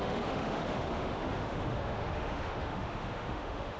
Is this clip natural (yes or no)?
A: no